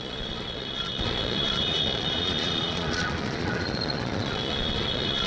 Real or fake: fake